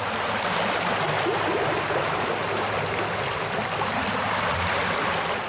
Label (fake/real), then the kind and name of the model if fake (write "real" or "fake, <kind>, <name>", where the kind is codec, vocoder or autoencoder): real